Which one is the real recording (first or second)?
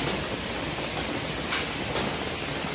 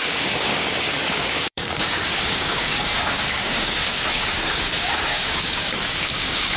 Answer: first